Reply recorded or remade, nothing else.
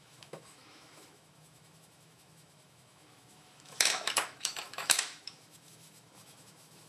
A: remade